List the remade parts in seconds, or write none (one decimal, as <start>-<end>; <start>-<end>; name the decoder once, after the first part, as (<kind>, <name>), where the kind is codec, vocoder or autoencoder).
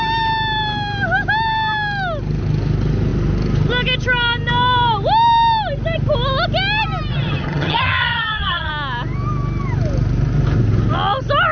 7.1-8.7 (vocoder, HiFi-GAN)